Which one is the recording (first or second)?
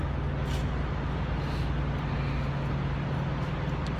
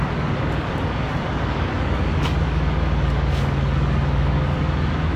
first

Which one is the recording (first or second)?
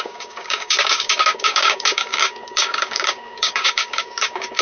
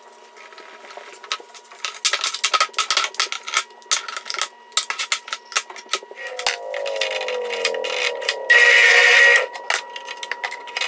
second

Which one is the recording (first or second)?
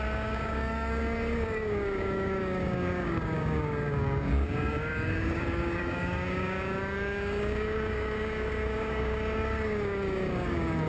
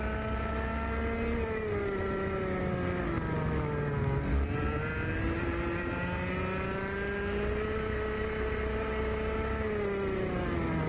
second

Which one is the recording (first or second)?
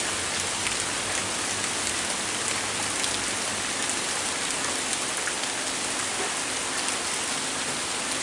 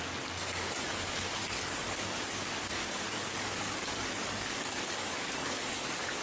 first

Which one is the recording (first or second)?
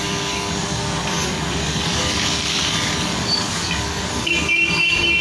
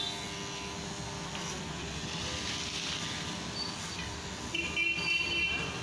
second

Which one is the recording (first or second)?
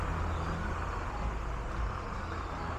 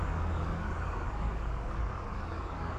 first